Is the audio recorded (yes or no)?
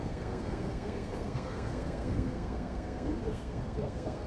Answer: no